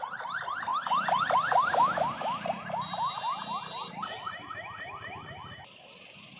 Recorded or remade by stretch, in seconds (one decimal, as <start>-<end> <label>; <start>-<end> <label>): 0.0-6.4 recorded